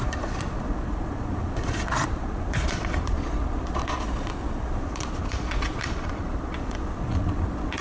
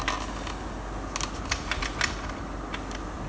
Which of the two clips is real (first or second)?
second